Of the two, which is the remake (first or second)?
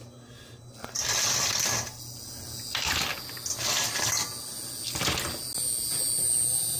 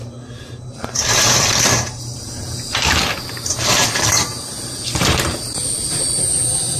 second